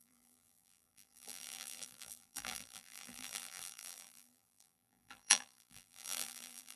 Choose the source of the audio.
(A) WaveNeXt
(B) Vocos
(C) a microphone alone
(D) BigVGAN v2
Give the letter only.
D